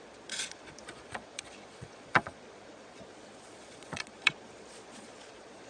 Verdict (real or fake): fake